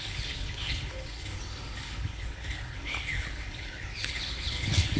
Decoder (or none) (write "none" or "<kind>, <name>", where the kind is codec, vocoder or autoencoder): codec, HILCodec